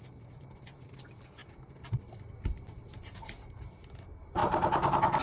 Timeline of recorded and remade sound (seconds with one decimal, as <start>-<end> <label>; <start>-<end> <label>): 0.0-1.4 remade; 1.4-3.0 recorded; 3.0-4.4 remade; 4.4-5.2 recorded